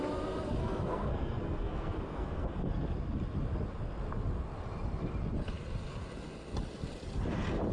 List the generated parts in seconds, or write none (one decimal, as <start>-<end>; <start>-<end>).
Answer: 0.6-2.7